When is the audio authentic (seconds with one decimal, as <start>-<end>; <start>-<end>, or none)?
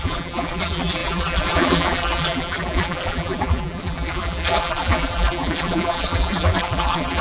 none